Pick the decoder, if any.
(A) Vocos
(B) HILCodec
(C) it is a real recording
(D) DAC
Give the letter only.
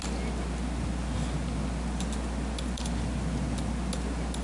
C